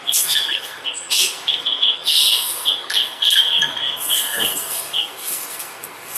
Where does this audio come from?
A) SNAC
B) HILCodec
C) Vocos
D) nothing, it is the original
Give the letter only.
A